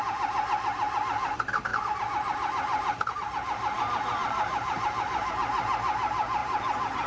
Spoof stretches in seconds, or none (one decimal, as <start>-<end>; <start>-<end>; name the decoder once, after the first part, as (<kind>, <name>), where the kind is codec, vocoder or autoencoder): 1.7-5.3 (vocoder, BigVGAN v2); 6.4-7.1